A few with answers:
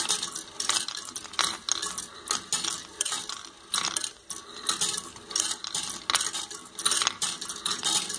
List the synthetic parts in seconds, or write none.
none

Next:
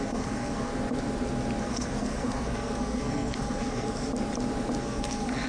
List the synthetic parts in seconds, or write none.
0.0-0.7 (codec, SNAC); 1.6-4.1; 4.8-5.5

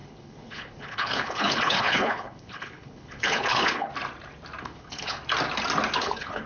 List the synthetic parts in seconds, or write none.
0.0-3.9 (codec, HILCodec); 4.6-5.2; 6.0-6.5

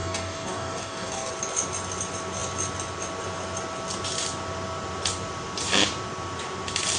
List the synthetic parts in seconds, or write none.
0.0-1.3 (codec, DAC)